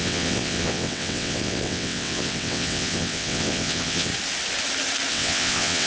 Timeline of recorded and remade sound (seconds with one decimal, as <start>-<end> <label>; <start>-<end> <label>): 0.0-4.1 remade; 4.1-5.1 recorded; 5.1-5.9 remade